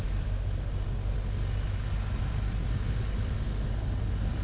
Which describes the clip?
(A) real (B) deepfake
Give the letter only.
A